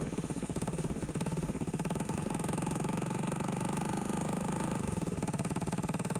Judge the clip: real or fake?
fake